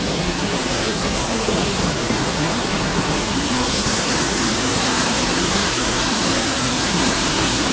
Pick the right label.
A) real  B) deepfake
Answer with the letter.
B